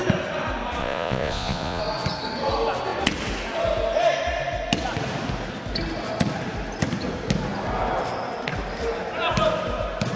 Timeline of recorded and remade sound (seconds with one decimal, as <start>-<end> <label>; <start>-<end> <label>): 0.0-0.8 recorded; 0.8-1.8 remade; 1.8-10.2 recorded